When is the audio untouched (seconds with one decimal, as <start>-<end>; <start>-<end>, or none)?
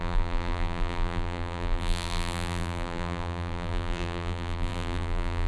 none